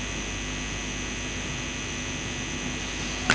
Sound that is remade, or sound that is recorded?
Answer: recorded